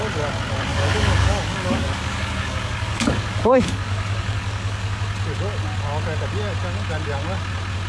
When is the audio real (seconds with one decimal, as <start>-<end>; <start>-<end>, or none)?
0.0-0.7; 5.0-7.9